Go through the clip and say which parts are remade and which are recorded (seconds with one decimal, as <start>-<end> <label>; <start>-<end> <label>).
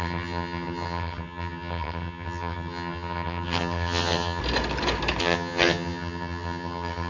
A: 0.0-4.4 remade; 4.4-5.2 recorded; 5.2-7.1 remade